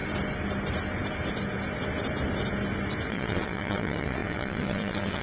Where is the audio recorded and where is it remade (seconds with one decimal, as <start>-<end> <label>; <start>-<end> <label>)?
0.0-3.1 recorded; 3.1-5.2 remade